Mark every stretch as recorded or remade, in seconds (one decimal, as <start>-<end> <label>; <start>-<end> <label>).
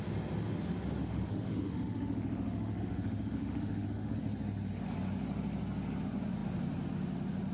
0.0-1.0 recorded; 1.0-4.1 remade; 4.1-7.5 recorded